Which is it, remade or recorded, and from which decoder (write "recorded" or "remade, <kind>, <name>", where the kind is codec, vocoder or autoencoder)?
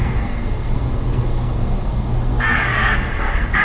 remade, codec, SNAC